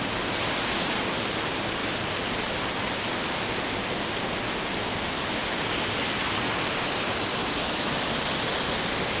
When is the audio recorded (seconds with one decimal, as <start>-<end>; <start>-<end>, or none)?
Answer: 0.0-7.4; 7.9-9.2